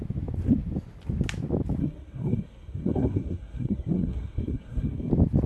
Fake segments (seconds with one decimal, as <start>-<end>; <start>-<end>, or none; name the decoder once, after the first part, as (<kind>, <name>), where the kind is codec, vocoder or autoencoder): 1.8-5.1 (codec, SNAC)